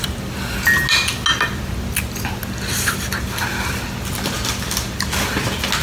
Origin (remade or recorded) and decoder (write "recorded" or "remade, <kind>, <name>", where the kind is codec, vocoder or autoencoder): recorded